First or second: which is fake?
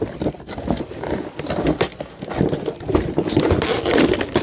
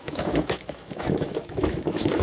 second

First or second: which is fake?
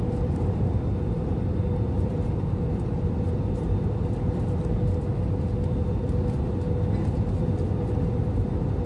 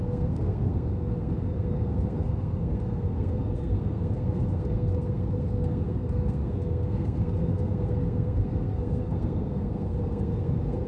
second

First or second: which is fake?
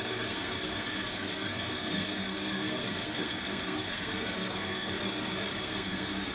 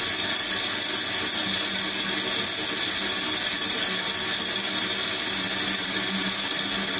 first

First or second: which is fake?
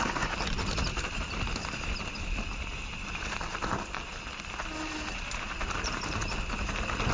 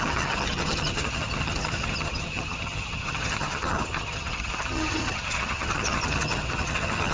second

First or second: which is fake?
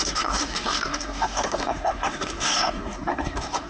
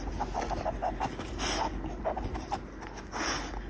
first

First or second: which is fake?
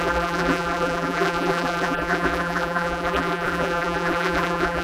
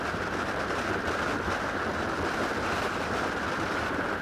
first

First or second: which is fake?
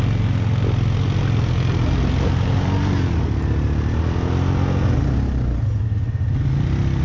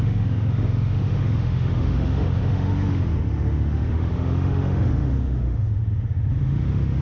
second